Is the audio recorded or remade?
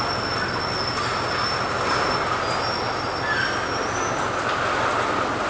recorded